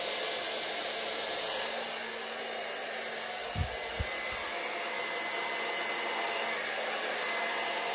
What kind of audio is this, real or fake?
real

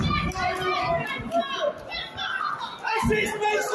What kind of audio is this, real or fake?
real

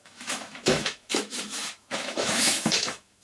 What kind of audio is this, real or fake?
fake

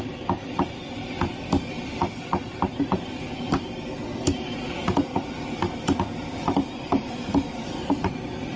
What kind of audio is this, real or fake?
real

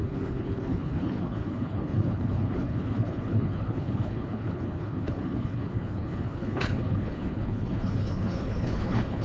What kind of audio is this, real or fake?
fake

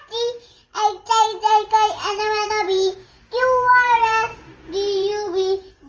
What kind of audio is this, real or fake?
fake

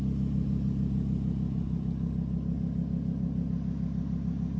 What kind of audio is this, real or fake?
real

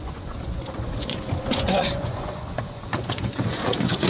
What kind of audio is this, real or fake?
fake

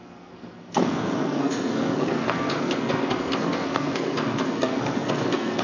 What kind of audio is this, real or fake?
fake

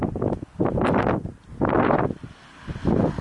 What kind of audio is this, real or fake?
real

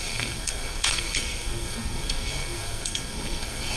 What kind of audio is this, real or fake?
fake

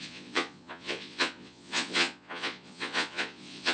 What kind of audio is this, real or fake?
fake